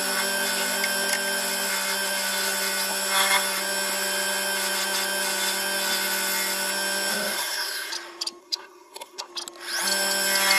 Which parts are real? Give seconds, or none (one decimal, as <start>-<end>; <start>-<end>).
0.0-7.1; 7.9-8.4; 9.3-10.6